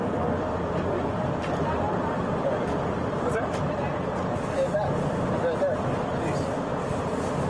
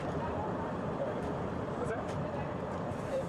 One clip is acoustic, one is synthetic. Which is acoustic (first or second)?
first